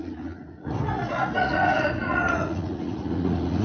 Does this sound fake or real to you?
fake